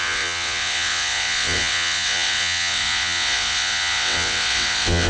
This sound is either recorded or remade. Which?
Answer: remade